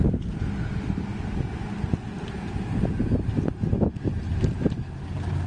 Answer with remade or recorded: recorded